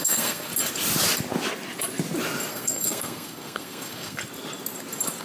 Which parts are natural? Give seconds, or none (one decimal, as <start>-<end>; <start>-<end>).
0.5-2.5; 4.2-5.2